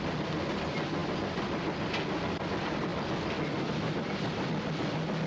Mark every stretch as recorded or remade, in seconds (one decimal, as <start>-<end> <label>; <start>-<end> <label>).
0.0-5.3 recorded